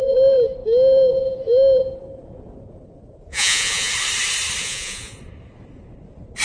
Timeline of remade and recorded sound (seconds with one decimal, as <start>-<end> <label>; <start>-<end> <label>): 0.0-3.3 recorded; 3.3-3.9 remade; 3.9-4.6 recorded; 4.6-5.2 remade; 5.2-6.4 recorded